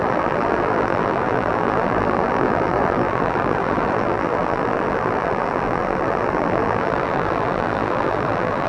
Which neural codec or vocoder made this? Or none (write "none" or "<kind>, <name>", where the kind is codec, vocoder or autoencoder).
vocoder, BigVGAN v2